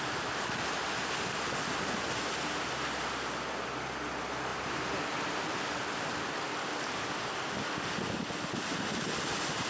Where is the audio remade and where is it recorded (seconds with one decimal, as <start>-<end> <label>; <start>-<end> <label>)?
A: 0.0-4.5 recorded; 4.5-5.0 remade; 5.0-9.7 recorded